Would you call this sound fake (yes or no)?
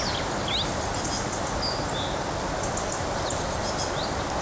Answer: no